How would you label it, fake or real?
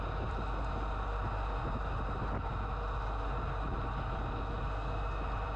real